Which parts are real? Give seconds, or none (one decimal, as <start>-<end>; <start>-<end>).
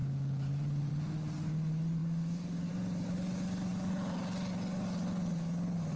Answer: 0.0-6.0